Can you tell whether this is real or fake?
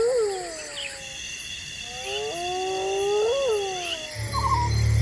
real